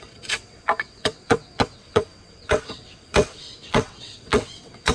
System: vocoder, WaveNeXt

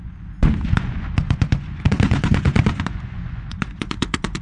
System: vocoder, Vocos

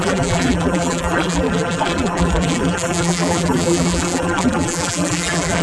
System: vocoder, BigVGAN v2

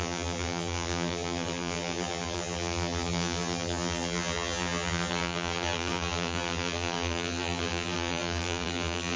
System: vocoder, BigVGAN v2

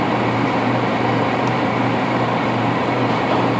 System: vocoder, BigVGAN v2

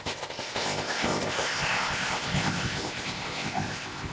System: codec, ZipCodec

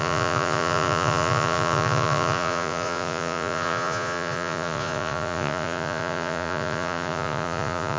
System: vocoder, Vocos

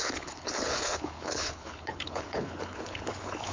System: codec, HILCodec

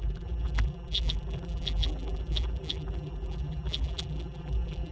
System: vocoder, BigVGAN v2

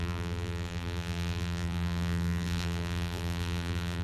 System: vocoder, BigVGAN v2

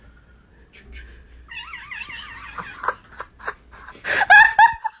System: none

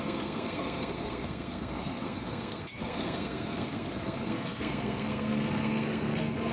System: codec, SNAC